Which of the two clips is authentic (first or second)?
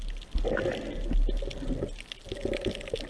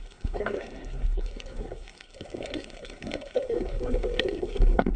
first